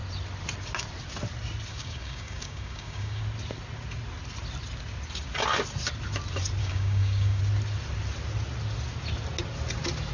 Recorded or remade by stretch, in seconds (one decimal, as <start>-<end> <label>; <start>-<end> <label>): 0.0-1.7 recorded; 1.7-3.2 remade; 3.2-6.6 recorded; 6.6-7.4 remade; 7.4-10.1 recorded